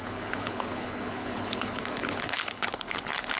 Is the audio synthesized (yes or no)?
yes